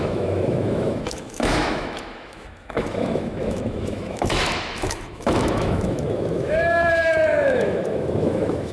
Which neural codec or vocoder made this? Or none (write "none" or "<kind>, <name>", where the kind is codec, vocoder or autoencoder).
autoencoder, DAC-VAE